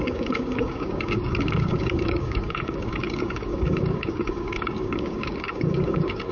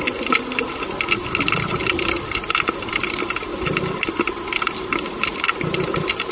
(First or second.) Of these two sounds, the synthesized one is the first